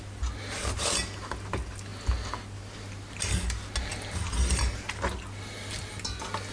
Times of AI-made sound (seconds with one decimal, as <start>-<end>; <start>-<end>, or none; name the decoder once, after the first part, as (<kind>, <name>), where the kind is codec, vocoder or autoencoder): none